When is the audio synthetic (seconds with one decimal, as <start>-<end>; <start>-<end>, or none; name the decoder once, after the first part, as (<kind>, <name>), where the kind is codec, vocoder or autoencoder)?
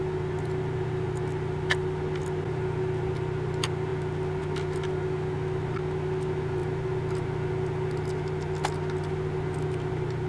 none